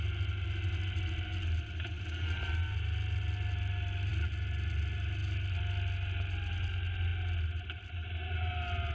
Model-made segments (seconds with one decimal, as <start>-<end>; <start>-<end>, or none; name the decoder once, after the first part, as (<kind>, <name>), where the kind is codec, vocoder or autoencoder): none